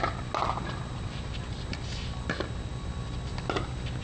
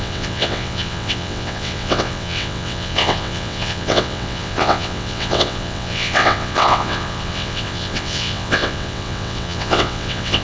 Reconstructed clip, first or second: second